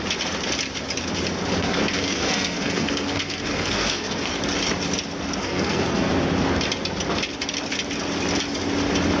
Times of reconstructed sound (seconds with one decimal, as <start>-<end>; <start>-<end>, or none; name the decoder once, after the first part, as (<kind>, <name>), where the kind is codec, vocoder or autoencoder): 1.6-4.3 (codec, SNAC); 5.4-6.1